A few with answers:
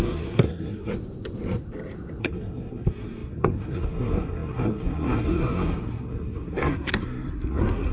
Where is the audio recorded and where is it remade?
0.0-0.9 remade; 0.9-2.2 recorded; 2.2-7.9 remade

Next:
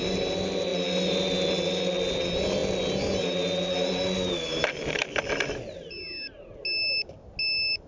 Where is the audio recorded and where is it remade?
0.0-7.9 recorded